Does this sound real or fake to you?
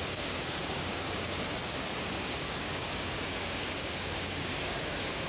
fake